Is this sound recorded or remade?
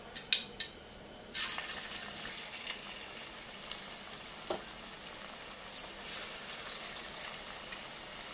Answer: recorded